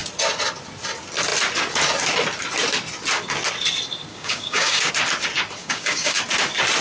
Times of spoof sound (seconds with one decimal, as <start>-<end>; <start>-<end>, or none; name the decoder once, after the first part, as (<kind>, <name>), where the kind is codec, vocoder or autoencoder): 4.1-4.9 (codec, DAC); 5.6-6.2